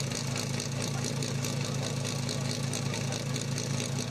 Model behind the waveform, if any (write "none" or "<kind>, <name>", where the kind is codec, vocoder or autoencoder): none